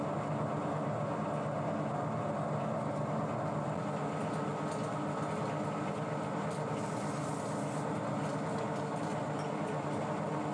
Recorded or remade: recorded